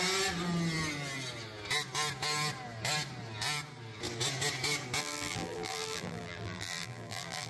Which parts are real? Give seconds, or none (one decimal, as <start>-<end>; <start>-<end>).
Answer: 0.0-5.0